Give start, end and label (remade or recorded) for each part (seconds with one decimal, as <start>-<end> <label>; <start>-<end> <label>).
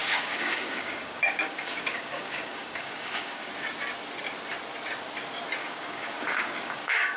0.0-3.5 remade; 3.5-5.6 recorded; 5.6-7.2 remade